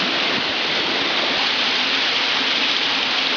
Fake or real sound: real